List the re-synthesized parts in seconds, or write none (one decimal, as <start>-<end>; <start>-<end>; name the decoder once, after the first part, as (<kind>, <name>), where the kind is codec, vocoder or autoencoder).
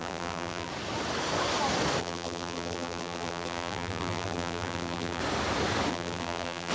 0.0-0.7 (vocoder, BigVGAN v2); 2.0-5.2; 5.9-6.7